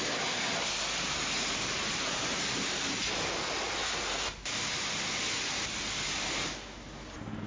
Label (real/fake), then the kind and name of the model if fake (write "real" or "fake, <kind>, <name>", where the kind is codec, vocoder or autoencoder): real